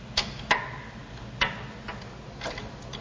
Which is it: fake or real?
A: real